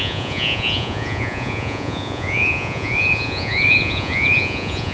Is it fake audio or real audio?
fake